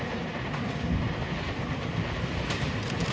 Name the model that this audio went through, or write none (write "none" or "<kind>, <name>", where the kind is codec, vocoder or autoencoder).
none